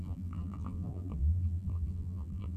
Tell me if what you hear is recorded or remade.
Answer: remade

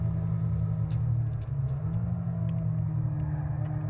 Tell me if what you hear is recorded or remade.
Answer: recorded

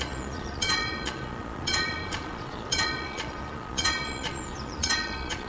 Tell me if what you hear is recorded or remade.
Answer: remade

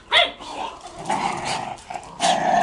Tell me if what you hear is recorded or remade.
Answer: recorded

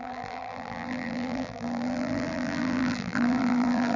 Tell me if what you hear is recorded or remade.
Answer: remade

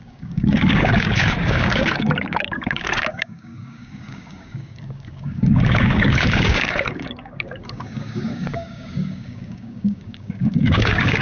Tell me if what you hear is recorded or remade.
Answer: remade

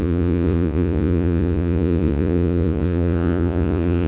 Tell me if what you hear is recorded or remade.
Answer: remade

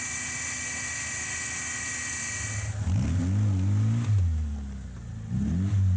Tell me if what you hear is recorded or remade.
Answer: recorded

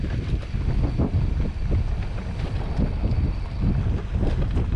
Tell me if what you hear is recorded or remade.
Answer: recorded